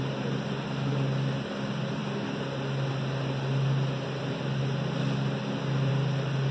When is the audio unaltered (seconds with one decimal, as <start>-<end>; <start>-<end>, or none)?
0.0-6.5